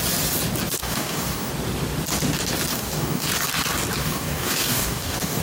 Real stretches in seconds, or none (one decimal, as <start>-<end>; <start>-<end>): 0.0-0.8; 1.5-2.7; 3.3-4.0